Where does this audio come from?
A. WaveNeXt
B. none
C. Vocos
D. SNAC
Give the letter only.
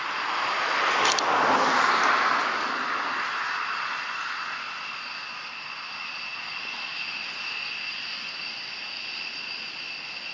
B